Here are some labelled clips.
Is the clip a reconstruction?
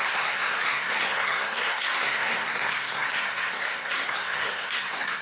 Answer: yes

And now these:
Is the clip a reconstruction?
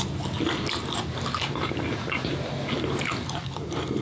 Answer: no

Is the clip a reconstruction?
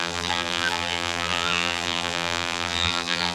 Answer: yes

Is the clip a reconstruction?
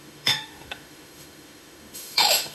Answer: yes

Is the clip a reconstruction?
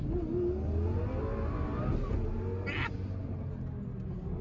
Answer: no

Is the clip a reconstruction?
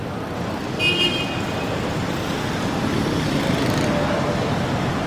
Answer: no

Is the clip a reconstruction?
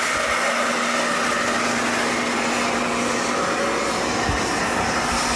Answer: no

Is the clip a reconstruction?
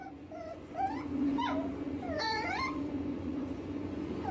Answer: yes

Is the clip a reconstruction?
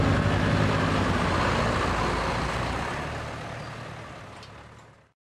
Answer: no